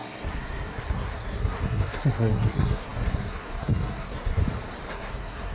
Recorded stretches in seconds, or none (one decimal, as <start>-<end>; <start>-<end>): 4.4-4.9